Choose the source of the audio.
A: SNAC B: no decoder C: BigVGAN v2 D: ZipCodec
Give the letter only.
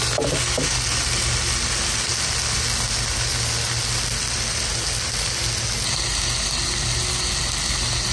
B